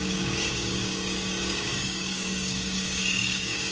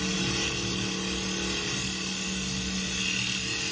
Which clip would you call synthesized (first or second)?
first